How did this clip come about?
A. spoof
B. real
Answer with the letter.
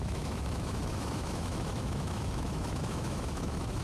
A